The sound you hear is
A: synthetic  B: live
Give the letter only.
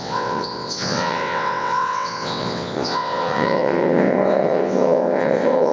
A